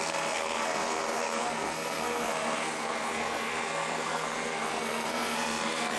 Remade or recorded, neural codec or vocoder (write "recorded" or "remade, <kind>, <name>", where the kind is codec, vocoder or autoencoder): remade, codec, SNAC